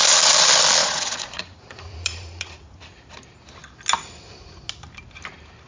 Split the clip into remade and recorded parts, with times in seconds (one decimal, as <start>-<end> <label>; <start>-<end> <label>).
0.0-0.8 recorded; 0.8-3.0 remade; 3.0-5.7 recorded